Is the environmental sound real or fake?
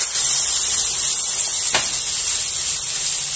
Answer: real